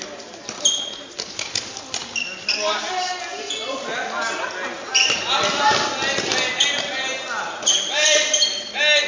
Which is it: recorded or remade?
recorded